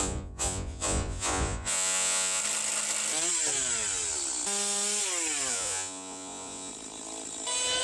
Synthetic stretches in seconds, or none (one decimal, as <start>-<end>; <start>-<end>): 0.0-2.4; 5.5-6.7